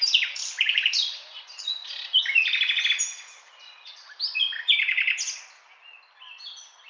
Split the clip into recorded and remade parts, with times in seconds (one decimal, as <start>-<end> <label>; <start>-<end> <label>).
0.0-6.9 recorded